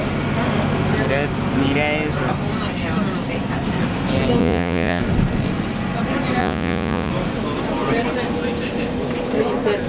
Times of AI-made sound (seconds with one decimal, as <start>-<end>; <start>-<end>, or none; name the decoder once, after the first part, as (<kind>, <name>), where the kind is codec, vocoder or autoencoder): 4.4-5.0 (vocoder, Vocos); 6.4-7.1